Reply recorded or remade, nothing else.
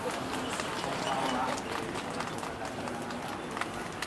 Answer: recorded